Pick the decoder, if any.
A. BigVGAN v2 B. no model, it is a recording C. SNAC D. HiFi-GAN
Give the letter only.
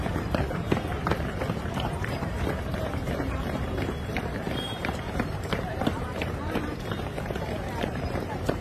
A